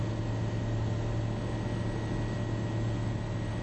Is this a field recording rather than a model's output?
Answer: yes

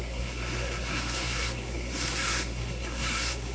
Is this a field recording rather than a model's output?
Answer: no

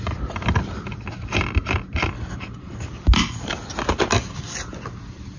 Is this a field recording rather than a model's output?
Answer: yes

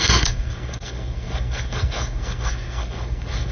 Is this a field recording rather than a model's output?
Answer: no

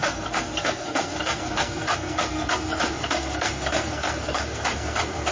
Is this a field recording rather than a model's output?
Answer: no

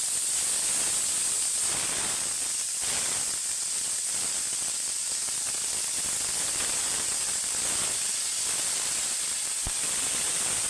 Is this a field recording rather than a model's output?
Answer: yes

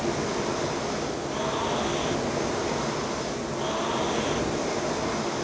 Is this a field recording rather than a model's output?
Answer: yes